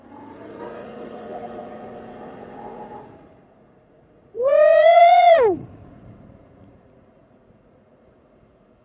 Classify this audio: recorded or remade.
remade